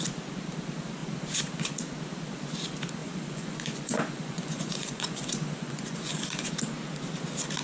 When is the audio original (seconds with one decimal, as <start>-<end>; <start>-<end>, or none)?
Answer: 0.0-3.0; 6.5-7.6